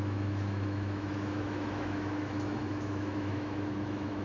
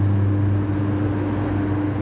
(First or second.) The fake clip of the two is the first